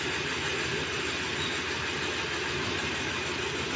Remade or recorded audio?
recorded